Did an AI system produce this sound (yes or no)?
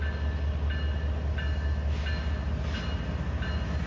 no